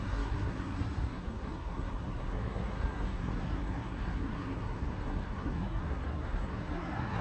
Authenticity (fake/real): fake